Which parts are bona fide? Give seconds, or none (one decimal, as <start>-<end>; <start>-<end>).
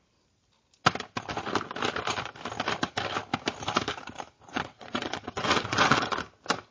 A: 0.0-4.5; 6.1-6.7